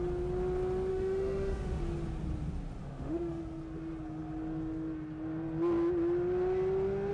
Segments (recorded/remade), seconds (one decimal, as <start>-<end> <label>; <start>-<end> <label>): 0.0-0.9 recorded; 0.9-1.8 remade; 1.8-2.8 recorded; 2.8-3.4 remade; 3.4-7.1 recorded